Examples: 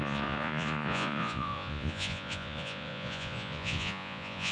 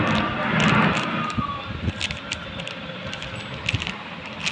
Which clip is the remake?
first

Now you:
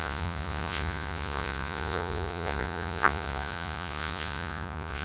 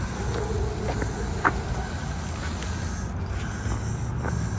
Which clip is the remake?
first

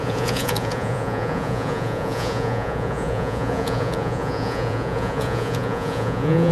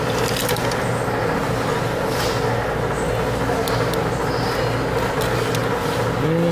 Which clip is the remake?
first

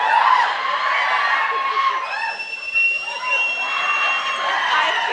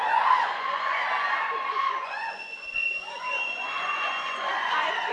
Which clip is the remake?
second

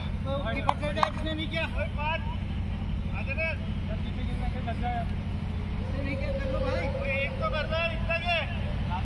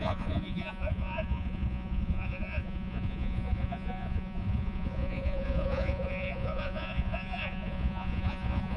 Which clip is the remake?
second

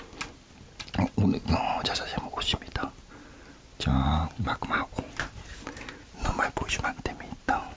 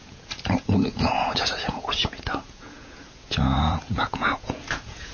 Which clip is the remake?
second